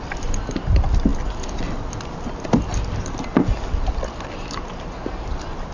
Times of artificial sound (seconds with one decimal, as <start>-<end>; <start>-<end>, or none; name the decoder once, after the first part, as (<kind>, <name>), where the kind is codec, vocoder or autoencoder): none